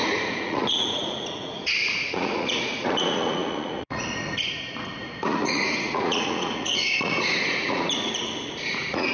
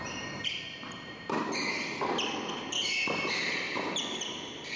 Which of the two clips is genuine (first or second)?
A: second